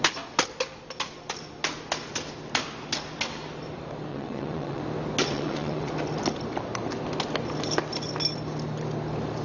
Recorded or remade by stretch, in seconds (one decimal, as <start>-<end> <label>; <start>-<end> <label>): 0.0-4.1 recorded; 4.1-4.8 remade; 4.8-5.2 recorded; 5.2-5.9 remade; 5.9-9.4 recorded